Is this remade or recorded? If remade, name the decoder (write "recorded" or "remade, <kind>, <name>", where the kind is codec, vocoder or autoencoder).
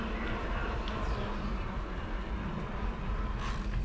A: recorded